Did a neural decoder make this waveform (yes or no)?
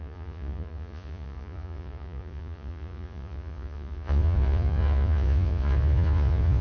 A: yes